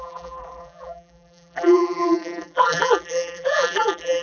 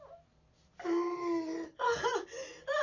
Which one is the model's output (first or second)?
first